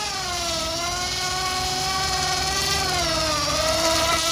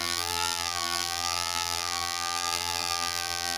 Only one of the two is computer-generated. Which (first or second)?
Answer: second